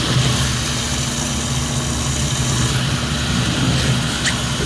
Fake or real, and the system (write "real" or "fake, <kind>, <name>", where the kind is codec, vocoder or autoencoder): real